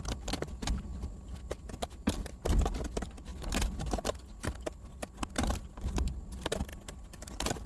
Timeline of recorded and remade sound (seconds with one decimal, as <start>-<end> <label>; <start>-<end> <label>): 0.0-7.7 recorded